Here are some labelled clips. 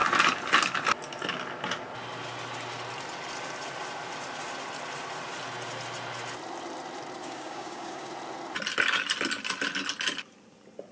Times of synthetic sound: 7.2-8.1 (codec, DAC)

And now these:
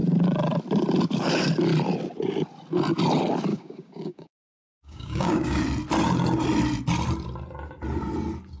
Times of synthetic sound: 3.5-5.6 (codec, DAC)

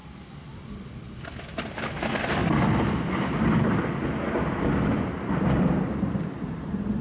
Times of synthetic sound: none

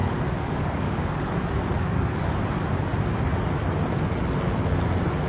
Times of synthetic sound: 0.0-2.2 (codec, DAC)